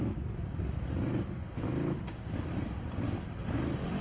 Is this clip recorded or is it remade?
recorded